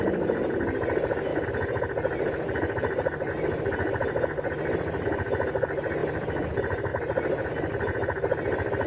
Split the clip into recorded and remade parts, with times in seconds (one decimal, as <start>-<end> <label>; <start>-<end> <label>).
0.0-1.3 recorded; 1.3-3.3 remade; 3.3-6.0 recorded; 6.0-6.5 remade; 6.5-8.9 recorded

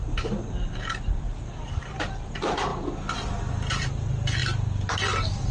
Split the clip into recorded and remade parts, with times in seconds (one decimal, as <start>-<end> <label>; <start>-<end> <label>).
0.0-5.5 recorded

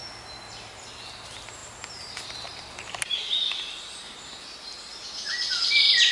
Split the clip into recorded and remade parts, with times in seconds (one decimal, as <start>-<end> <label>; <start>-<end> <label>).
0.0-0.7 recorded; 0.7-4.9 remade; 4.9-5.5 recorded; 5.5-6.1 remade

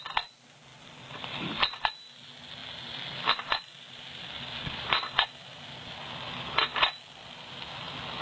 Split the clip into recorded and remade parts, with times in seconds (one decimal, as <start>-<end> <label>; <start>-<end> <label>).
0.0-8.2 recorded

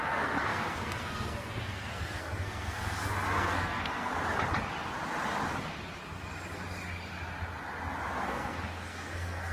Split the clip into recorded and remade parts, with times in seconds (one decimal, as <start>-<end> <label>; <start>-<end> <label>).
0.0-4.1 remade; 4.1-8.1 recorded; 8.1-9.5 remade

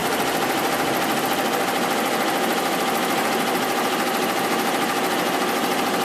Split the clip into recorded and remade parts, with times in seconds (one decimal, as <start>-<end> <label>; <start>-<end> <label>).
0.0-6.0 recorded

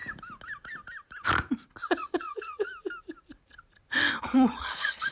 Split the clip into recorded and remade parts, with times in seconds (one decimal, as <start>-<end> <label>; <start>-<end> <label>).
0.0-1.8 recorded; 1.8-2.7 remade; 2.7-4.2 recorded; 4.2-5.1 remade

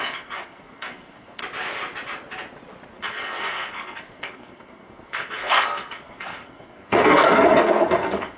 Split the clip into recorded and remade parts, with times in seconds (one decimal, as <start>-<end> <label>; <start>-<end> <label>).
0.0-1.4 remade; 1.4-2.9 recorded; 2.9-8.4 remade